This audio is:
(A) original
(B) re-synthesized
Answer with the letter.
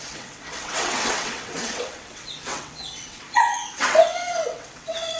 B